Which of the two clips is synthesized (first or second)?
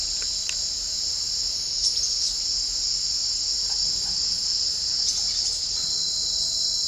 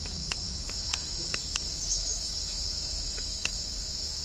second